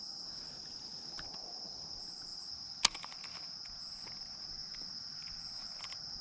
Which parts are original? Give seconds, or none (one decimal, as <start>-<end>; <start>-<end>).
0.0-6.2